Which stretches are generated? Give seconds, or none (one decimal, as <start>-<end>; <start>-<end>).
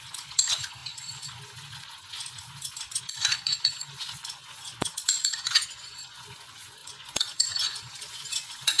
0.0-8.8